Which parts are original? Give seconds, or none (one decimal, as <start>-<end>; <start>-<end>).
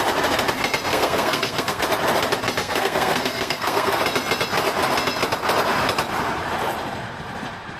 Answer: 0.0-0.9; 1.8-2.6; 4.0-7.8